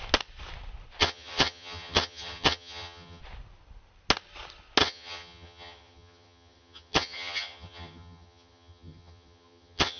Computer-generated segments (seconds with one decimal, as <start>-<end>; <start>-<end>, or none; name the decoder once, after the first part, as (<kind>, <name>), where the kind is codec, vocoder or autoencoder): 1.0-3.2 (vocoder, HiFi-GAN); 4.8-10.0